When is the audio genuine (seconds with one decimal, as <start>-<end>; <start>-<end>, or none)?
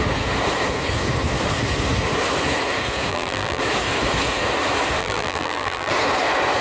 0.0-3.1; 3.6-5.0; 5.9-6.6